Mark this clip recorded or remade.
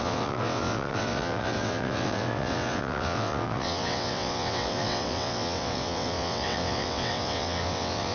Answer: remade